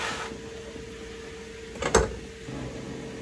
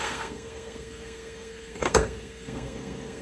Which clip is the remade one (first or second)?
second